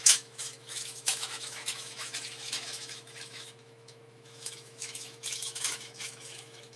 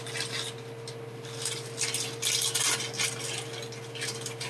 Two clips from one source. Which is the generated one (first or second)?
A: first